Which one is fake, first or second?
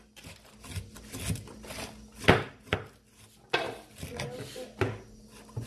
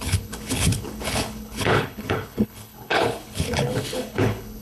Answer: second